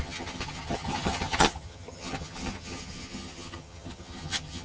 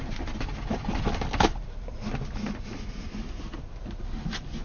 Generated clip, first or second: first